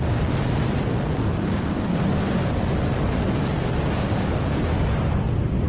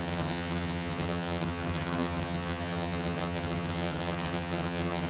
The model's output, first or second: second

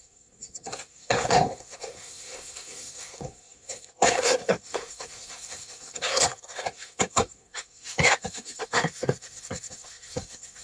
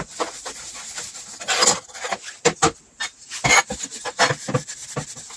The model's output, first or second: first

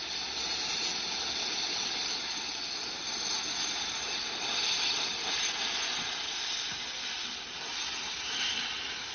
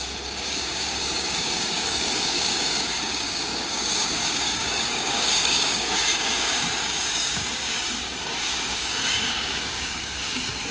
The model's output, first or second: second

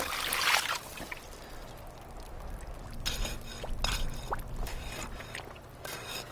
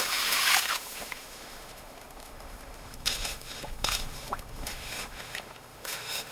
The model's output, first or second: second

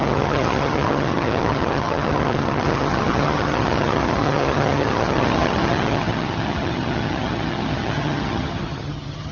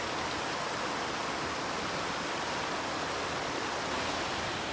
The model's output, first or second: first